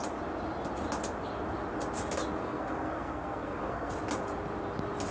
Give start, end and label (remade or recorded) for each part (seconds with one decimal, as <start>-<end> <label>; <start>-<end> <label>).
0.0-2.4 recorded; 2.4-3.9 remade; 3.9-5.1 recorded

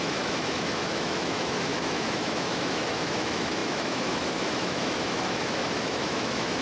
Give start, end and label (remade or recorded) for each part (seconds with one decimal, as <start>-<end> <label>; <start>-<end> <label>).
0.0-6.6 remade

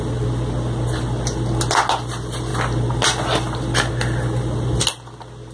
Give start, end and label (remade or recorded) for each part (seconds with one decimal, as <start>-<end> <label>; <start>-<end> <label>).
0.0-5.5 recorded

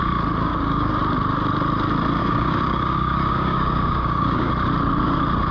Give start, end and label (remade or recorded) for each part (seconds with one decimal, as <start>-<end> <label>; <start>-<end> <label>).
0.0-0.5 recorded; 0.5-1.0 remade; 1.0-2.2 recorded; 2.2-4.5 remade; 4.5-5.5 recorded